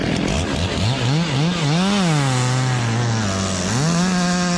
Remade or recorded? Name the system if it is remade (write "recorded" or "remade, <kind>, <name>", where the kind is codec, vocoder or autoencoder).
recorded